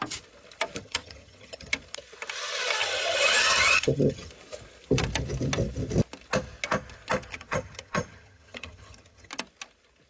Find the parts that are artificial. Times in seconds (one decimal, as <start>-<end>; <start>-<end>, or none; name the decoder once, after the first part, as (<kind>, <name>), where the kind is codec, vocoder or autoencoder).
0.8-1.7 (vocoder, HiFi-GAN); 2.8-4.3; 7.3-9.3